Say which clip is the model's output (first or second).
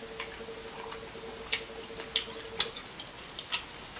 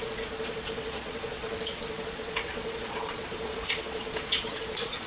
second